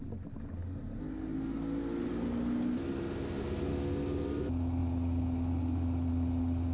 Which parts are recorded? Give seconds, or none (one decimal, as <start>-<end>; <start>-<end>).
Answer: 0.0-6.7